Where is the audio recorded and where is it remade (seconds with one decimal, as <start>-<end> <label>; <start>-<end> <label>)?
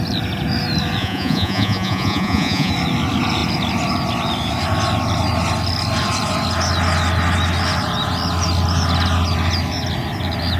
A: 0.0-1.0 recorded; 1.0-2.7 remade; 2.7-10.6 recorded